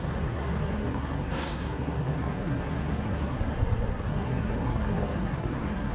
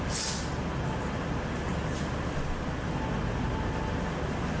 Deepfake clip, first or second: first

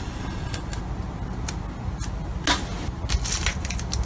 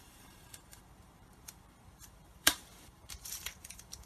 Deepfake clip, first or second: second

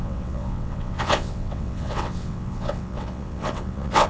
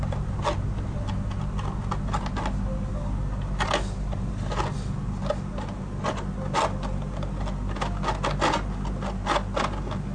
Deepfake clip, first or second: first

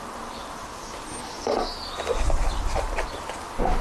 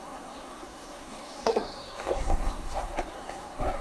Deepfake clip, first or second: second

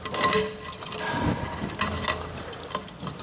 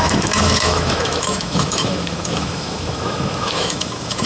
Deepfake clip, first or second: second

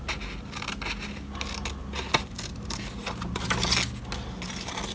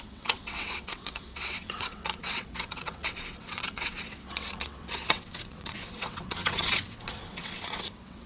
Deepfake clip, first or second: second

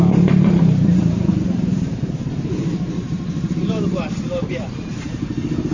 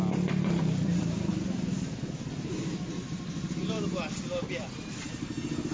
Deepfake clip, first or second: first